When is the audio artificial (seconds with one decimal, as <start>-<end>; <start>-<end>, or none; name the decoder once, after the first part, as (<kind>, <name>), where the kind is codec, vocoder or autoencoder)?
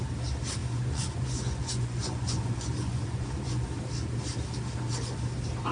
0.6-3.7 (vocoder, Vocos)